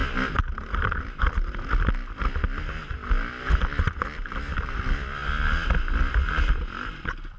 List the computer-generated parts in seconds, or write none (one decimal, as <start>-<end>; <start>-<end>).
none